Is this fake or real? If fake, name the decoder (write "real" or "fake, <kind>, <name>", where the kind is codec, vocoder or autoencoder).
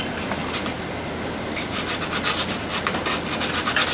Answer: real